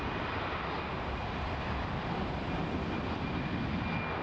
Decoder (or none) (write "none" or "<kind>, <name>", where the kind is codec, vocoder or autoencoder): none